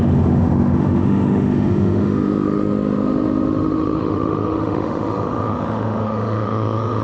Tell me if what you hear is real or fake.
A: fake